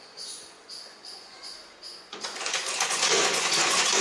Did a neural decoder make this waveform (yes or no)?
yes